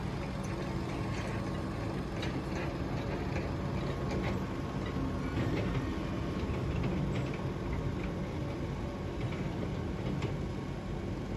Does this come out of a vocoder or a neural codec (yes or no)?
no